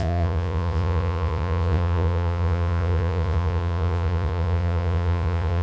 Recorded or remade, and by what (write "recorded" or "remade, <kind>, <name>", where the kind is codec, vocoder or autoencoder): remade, vocoder, Vocos